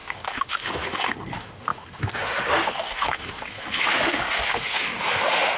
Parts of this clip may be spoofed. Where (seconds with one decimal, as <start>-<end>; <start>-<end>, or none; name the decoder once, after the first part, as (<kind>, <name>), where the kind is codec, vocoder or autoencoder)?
0.0-5.6 (autoencoder, DAC-VAE)